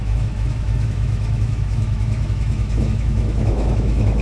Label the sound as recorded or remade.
remade